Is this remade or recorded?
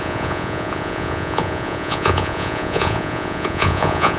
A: remade